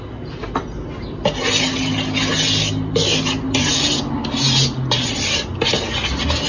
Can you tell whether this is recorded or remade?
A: recorded